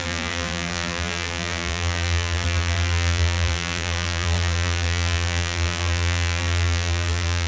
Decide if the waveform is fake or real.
fake